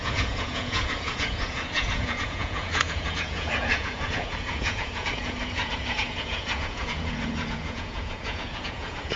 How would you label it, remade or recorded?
remade